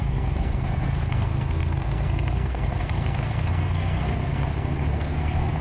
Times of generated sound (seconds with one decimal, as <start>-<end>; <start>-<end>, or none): 0.0-5.6